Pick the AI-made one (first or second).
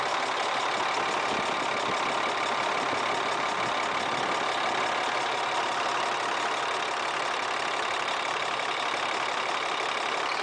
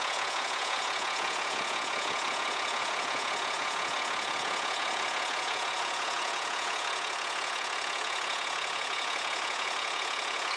second